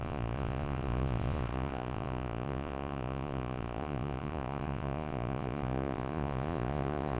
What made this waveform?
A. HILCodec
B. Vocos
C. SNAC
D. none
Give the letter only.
B